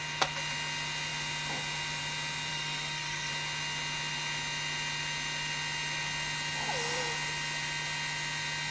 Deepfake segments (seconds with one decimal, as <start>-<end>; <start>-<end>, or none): 2.5-3.3